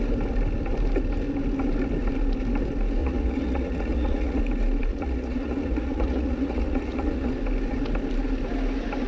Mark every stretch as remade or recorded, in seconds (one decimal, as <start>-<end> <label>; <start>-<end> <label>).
0.0-3.0 recorded; 3.0-4.4 remade; 4.4-4.9 recorded; 4.9-7.3 remade; 7.3-9.1 recorded